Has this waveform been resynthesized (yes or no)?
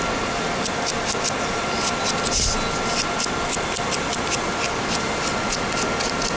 no